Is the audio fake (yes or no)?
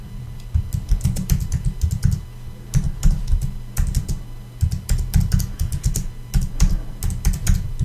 no